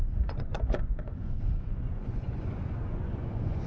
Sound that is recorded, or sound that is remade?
remade